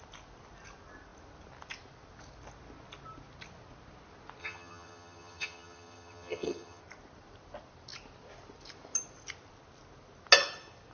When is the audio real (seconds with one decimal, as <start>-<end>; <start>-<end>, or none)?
0.0-4.4; 6.8-10.9